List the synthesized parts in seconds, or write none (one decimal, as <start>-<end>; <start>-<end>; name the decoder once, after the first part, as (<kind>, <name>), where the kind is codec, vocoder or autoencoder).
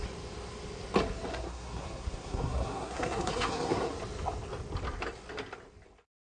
1.3-3.9 (codec, SNAC)